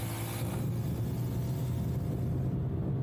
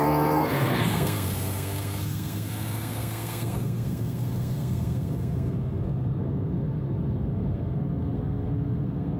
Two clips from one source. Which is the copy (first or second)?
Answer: second